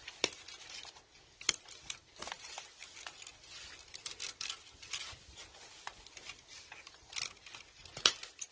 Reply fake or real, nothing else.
real